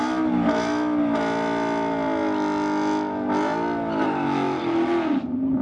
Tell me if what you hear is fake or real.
real